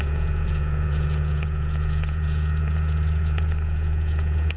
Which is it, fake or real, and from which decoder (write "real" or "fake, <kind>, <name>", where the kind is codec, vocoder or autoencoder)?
fake, vocoder, Vocos